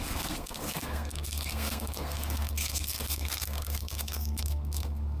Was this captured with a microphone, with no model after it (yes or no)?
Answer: no